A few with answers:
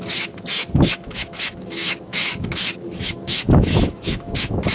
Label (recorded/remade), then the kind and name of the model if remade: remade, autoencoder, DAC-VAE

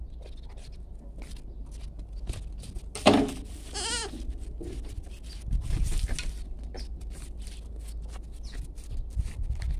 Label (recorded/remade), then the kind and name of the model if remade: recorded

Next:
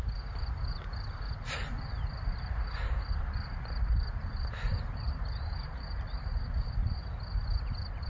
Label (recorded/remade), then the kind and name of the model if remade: remade, vocoder, BigVGAN v2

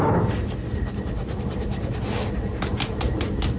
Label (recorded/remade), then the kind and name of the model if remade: recorded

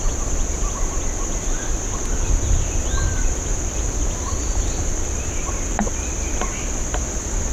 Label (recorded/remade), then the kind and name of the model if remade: recorded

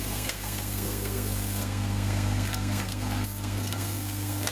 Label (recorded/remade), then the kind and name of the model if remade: remade, codec, SNAC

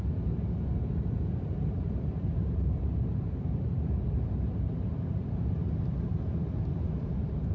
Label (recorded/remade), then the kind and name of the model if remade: remade, vocoder, BigVGAN v2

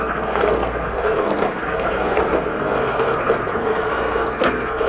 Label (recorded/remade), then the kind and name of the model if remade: remade, codec, SNAC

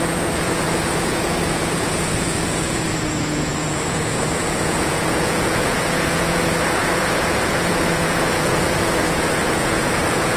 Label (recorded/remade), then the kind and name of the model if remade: remade, vocoder, Vocos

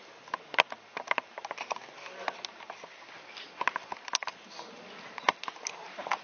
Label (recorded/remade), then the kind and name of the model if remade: recorded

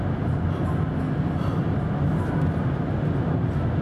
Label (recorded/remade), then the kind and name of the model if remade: recorded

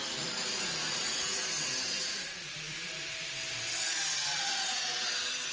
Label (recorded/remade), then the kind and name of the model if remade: remade, vocoder, BigVGAN v2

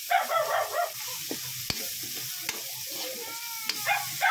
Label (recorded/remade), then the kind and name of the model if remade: recorded